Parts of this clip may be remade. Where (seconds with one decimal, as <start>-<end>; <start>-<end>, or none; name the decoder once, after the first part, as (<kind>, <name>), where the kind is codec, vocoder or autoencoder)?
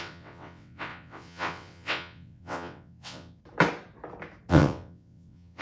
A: 0.0-3.4 (vocoder, WaveNeXt); 4.5-5.6